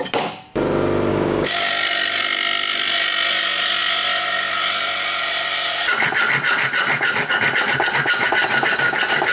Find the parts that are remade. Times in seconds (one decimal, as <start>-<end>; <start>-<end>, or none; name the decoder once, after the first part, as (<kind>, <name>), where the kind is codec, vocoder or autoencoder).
1.1-1.7 (codec, DAC)